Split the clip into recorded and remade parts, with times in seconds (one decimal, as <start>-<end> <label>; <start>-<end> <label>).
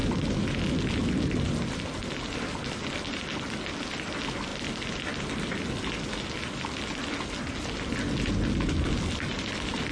0.0-9.9 recorded